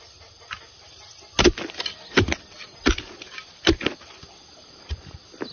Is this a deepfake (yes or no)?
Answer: no